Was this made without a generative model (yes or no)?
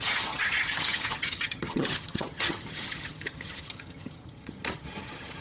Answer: no